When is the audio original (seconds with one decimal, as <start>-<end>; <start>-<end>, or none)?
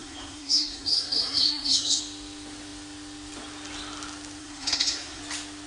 2.0-4.4; 5.2-5.7